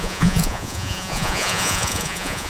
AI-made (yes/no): yes